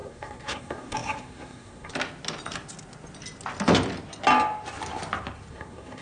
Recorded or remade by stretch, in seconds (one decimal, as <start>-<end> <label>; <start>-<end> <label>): 0.0-1.9 remade; 1.9-5.5 recorded; 5.5-6.0 remade